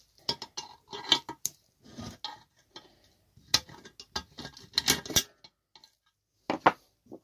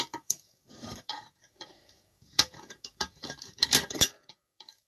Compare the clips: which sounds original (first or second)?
first